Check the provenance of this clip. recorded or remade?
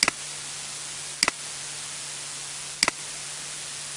recorded